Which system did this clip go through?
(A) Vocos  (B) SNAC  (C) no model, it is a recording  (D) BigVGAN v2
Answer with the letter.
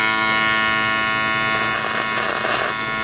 C